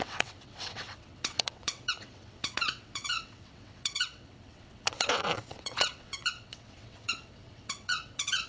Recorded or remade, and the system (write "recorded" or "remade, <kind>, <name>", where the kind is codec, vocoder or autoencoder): remade, vocoder, WaveNeXt